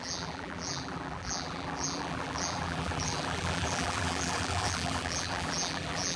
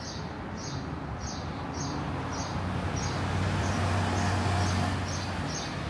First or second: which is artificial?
first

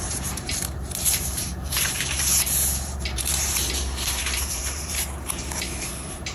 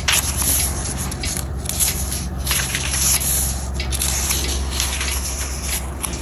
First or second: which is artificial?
first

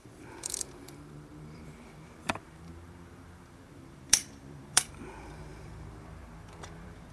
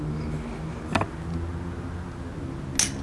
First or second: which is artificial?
first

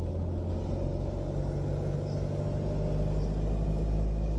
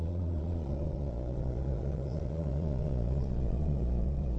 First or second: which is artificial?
second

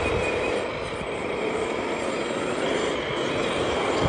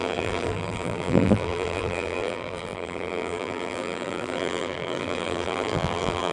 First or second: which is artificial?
second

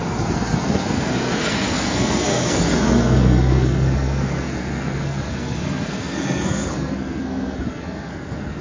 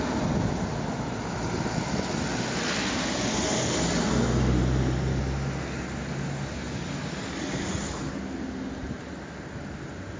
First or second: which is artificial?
first